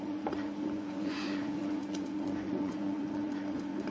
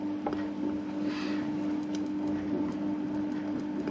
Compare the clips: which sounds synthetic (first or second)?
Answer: first